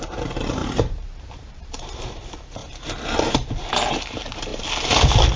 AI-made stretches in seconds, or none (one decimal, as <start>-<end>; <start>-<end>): 0.0-2.6; 3.3-4.5